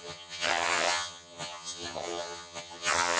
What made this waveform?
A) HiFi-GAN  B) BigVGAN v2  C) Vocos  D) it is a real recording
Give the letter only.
A